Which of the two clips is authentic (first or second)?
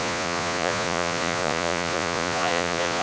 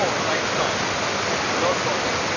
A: second